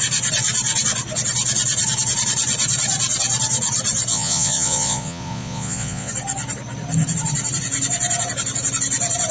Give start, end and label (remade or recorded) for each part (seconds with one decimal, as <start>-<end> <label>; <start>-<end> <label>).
0.0-4.1 recorded; 4.1-6.1 remade; 6.1-9.3 recorded